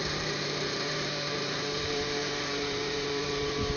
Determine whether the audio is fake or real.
fake